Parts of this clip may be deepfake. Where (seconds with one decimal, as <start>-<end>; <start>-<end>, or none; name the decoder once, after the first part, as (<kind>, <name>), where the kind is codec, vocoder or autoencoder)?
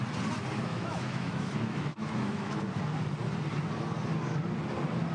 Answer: 0.7-2.6 (autoencoder, DAC-VAE)